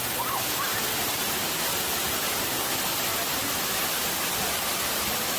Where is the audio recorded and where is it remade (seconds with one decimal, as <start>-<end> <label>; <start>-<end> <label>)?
0.0-5.4 recorded